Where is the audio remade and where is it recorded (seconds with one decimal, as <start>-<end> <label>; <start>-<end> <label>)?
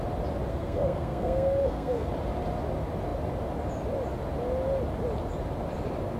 0.0-0.5 recorded; 0.5-2.1 remade; 2.1-6.2 recorded